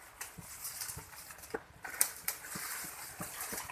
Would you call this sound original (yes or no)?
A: no